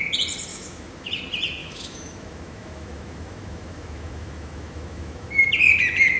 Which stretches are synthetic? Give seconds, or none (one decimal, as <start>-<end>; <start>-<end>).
0.5-1.1; 1.6-5.3